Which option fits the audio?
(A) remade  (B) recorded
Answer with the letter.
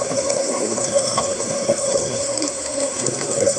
A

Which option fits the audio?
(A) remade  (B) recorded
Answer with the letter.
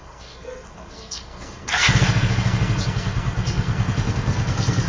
A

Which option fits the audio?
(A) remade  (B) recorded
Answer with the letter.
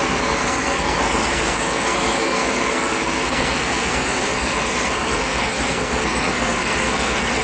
A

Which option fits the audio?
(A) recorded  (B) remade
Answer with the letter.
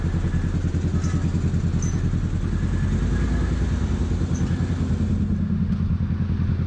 A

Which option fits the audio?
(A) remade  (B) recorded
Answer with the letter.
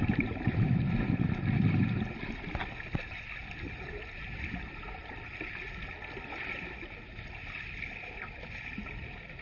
B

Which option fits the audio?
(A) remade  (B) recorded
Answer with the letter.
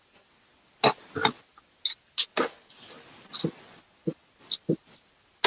B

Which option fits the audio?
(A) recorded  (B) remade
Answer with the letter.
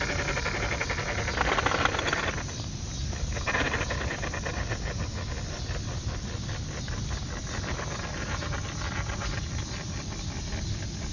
A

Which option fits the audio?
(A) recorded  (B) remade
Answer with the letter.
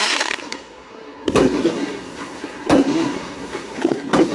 B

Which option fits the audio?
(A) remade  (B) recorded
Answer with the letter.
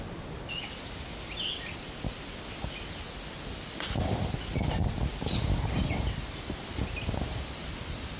B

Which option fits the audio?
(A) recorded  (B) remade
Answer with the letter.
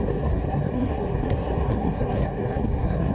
B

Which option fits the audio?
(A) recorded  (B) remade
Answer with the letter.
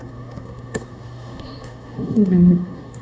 B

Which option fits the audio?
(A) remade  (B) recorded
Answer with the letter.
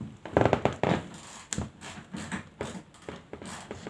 B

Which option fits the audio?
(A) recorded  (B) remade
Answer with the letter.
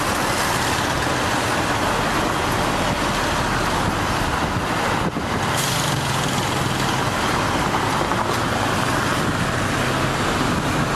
A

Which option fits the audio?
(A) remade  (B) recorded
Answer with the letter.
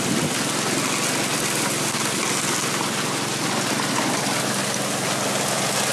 B